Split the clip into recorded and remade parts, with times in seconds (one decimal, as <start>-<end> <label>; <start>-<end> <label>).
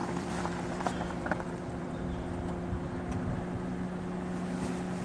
0.0-2.6 remade; 2.6-5.0 recorded